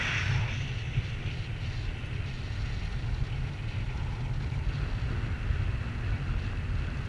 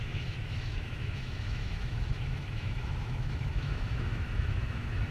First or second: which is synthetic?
second